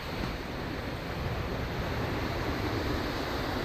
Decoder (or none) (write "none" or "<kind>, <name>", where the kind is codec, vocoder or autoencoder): none